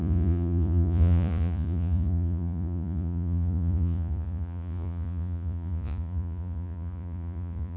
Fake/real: fake